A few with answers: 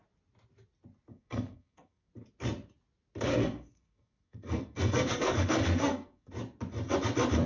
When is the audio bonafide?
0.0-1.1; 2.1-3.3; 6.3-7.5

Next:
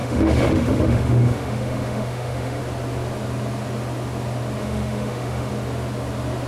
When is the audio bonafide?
2.6-4.6; 5.5-6.5

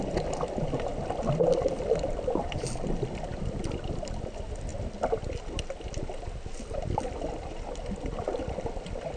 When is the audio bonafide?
0.0-9.2

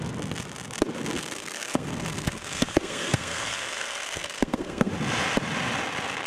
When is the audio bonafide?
0.0-1.2; 4.9-6.3

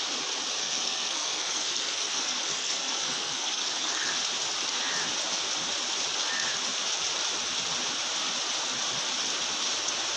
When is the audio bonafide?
0.0-0.6; 4.1-10.2

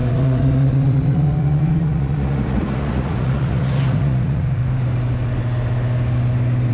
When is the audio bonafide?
4.6-6.7

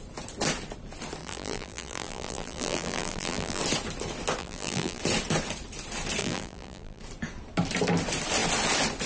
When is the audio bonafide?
0.0-1.2; 3.6-4.4; 5.0-6.2; 7.0-9.1

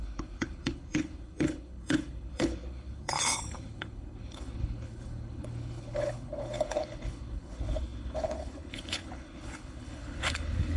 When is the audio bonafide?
none